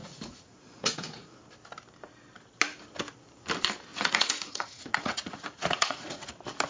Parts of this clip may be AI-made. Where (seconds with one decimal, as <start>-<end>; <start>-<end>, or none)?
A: 0.0-1.4; 3.9-6.3